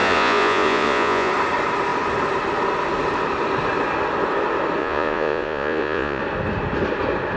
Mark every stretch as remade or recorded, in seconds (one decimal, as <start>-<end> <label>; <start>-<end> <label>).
0.0-1.3 remade; 1.3-4.8 recorded; 4.8-6.2 remade; 6.2-7.4 recorded